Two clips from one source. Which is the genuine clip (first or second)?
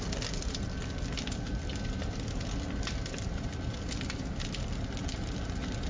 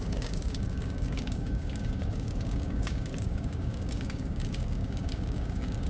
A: first